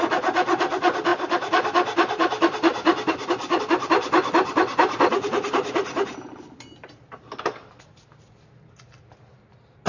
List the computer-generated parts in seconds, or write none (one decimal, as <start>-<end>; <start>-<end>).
none